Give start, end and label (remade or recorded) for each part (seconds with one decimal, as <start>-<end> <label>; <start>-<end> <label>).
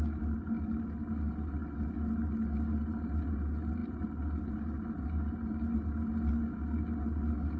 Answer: 0.0-7.6 recorded